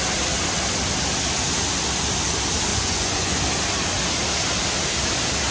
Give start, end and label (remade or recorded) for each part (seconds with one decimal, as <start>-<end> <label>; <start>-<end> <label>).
0.0-2.7 recorded; 2.7-3.4 remade; 3.4-5.5 recorded